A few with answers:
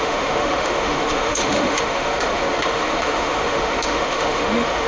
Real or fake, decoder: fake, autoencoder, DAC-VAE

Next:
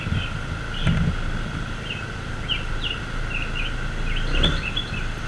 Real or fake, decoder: real